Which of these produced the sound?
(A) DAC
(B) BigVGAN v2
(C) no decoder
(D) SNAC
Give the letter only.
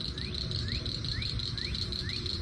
B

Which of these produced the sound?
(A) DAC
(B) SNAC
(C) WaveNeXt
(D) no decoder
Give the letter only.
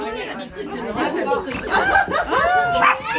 D